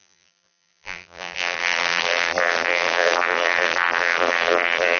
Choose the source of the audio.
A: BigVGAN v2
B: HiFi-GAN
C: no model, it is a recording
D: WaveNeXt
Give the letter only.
A